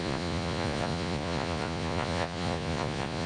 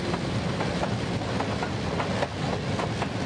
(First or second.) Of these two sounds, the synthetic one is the first